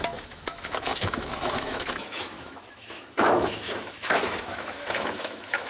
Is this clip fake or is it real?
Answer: fake